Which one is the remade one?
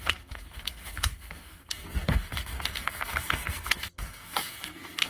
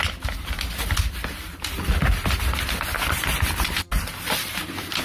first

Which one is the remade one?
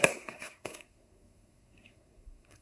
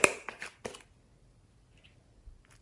first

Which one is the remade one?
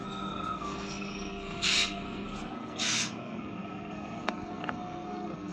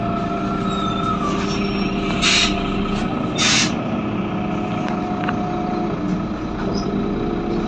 first